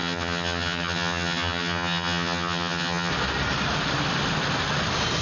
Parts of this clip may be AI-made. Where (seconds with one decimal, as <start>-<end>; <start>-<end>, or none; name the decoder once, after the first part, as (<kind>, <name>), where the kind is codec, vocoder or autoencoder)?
0.0-3.1 (vocoder, HiFi-GAN)